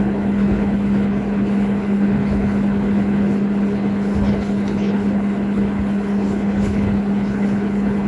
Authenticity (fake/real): fake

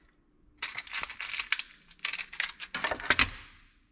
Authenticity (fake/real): real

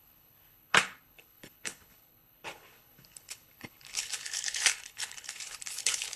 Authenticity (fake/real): fake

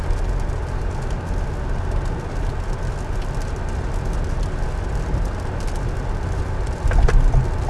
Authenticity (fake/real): real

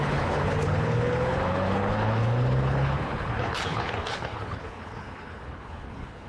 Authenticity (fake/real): fake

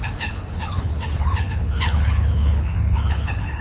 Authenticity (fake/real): fake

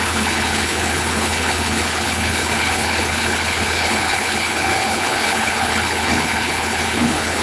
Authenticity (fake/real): fake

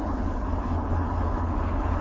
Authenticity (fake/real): fake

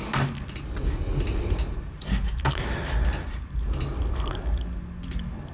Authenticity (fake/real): real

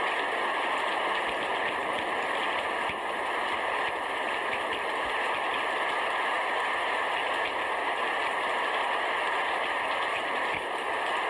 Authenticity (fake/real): real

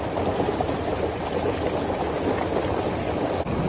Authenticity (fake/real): real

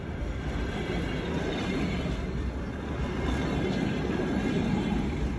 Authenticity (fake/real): real